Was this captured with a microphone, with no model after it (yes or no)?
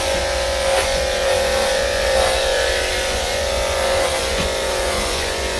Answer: no